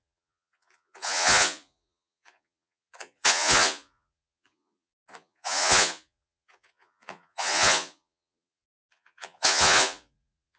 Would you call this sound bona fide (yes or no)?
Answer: no